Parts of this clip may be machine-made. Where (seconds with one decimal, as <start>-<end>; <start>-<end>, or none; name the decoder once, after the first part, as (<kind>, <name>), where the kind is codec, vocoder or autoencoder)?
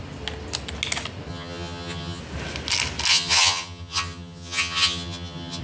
1.3-2.2 (vocoder, HiFi-GAN); 3.1-5.6